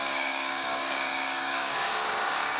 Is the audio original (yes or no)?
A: no